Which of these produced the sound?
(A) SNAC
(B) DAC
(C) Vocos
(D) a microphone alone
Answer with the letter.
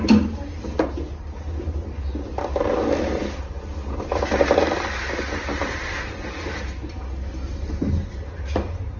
D